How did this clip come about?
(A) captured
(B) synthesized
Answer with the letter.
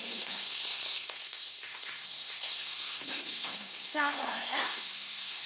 B